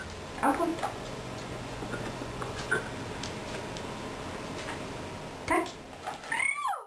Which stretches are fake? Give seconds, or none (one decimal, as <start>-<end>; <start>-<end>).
0.7-2.7